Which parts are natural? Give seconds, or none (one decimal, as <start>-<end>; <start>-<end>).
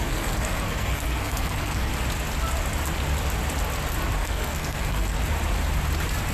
1.9-4.2; 5.2-6.3